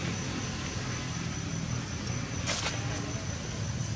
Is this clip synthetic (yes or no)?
no